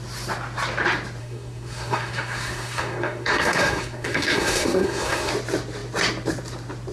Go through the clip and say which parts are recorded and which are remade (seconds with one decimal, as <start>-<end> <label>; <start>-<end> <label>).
0.0-1.2 recorded; 1.2-5.3 remade; 5.3-6.9 recorded